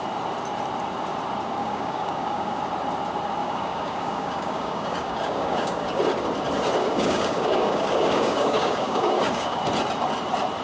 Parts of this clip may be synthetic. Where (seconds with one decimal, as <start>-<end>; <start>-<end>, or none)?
1.6-2.6; 3.4-6.0; 6.8-9.6